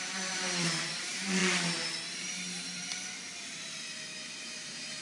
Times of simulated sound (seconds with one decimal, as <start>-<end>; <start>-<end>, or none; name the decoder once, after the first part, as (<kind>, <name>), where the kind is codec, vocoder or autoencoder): 0.0-1.4 (vocoder, BigVGAN v2); 4.4-5.0